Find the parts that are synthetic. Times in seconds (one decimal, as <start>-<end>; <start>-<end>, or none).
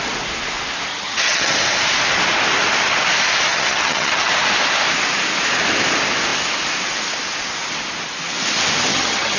0.9-1.6; 3.5-4.3; 8.9-9.4